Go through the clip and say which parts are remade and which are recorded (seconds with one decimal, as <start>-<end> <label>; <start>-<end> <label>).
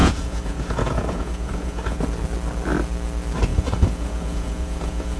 0.0-2.0 remade; 2.0-3.5 recorded; 3.5-5.2 remade